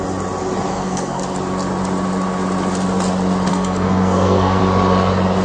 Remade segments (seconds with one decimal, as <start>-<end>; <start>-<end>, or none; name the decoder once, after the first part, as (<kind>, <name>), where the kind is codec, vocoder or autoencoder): 0.7-1.2 (codec, SNAC); 3.5-4.6